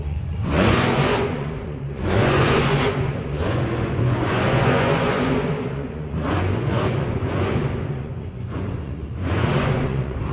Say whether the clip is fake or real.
fake